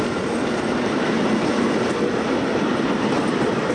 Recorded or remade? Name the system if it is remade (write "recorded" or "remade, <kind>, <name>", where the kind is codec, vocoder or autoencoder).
recorded